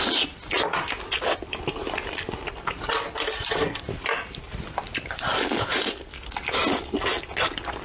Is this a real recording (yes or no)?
yes